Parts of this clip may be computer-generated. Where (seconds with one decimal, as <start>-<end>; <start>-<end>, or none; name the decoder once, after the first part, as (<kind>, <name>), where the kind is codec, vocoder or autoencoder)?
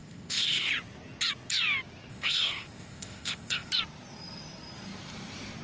0.0-0.7 (codec, ZipCodec); 2.1-3.7